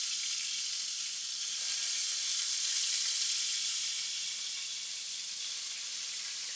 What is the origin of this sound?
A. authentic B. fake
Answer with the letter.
B